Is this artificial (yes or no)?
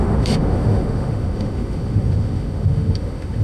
yes